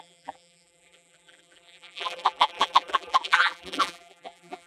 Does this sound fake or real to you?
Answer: fake